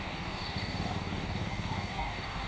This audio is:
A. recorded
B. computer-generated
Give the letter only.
B